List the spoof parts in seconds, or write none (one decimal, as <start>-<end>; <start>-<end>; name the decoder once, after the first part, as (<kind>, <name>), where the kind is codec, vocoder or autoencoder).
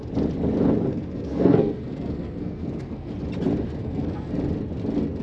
0.9-3.1 (codec, SNAC); 3.8-4.3